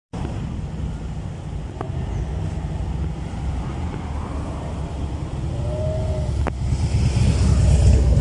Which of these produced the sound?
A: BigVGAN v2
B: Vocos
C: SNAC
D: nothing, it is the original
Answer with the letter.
D